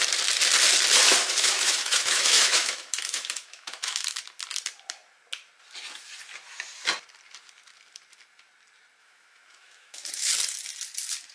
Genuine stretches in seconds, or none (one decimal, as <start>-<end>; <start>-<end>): 0.0-1.2; 4.2-9.0; 10.3-11.3